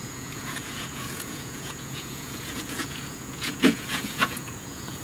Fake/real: fake